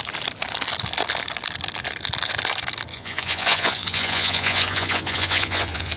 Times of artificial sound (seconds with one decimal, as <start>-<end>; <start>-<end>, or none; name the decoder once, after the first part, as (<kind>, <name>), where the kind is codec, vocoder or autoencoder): 2.9-6.0 (vocoder, Vocos)